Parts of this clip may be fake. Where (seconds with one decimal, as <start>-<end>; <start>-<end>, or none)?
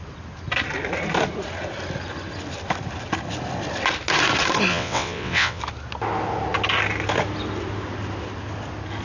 4.7-5.6